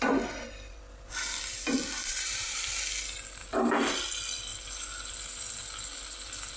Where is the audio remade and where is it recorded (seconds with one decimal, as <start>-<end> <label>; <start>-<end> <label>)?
0.0-2.0 recorded; 2.0-2.7 remade; 2.7-6.6 recorded

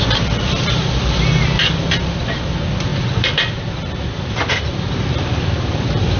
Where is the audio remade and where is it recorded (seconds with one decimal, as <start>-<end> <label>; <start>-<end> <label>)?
0.0-6.2 remade

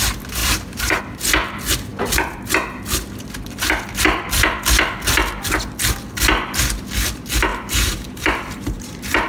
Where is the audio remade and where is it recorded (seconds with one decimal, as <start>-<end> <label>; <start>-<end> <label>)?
0.0-0.4 recorded; 0.4-1.0 remade; 1.0-7.5 recorded; 7.5-9.3 remade